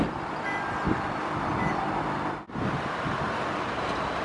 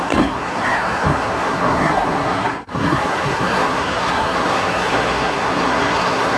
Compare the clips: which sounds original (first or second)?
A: first